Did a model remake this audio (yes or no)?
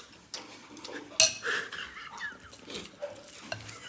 no